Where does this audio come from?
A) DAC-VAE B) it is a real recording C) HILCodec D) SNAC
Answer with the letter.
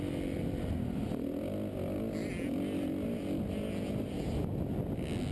B